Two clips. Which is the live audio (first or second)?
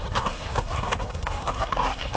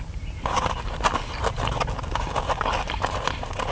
second